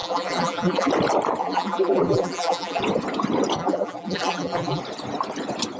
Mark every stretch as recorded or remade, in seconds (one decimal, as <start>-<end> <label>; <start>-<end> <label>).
0.0-0.9 remade; 0.9-1.4 recorded; 1.4-2.8 remade; 2.8-3.6 recorded; 3.6-4.8 remade; 4.8-5.8 recorded